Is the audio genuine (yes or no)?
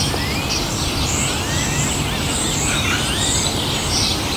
yes